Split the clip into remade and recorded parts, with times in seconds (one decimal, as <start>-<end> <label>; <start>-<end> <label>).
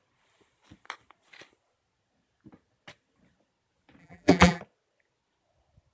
0.0-4.0 recorded; 4.0-4.6 remade; 4.6-5.9 recorded